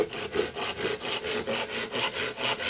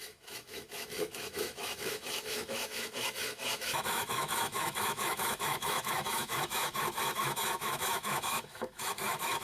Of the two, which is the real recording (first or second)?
first